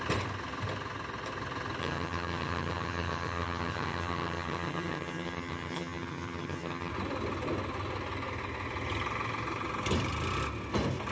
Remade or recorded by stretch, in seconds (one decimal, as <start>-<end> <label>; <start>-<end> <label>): 0.0-1.8 recorded; 1.8-6.9 remade; 6.9-11.1 recorded